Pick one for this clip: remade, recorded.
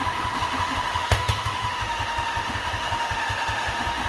remade